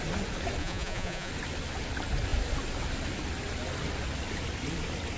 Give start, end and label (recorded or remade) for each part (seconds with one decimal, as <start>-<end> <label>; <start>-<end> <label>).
0.0-0.6 recorded; 0.6-1.3 remade; 1.3-5.2 recorded